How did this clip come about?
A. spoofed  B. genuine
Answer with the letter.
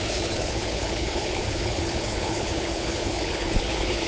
A